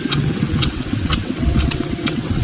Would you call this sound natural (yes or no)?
no